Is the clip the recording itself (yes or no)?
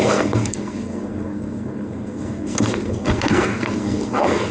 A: no